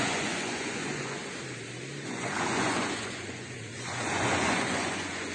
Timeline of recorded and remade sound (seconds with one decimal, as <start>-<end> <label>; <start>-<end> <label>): 0.0-1.2 remade; 1.2-2.0 recorded; 2.0-5.3 remade